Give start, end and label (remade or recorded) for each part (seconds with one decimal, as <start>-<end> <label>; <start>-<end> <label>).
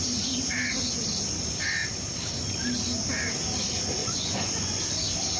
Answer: 0.0-4.0 recorded; 4.0-4.8 remade; 4.8-5.4 recorded